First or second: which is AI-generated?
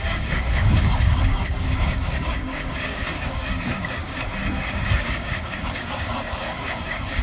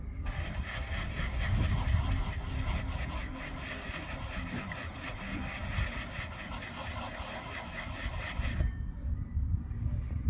first